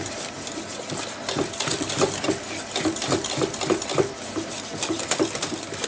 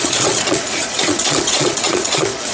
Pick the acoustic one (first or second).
first